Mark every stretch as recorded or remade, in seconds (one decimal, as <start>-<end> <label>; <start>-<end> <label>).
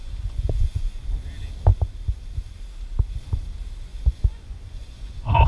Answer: 0.0-1.1 remade; 1.1-3.9 recorded; 3.9-5.5 remade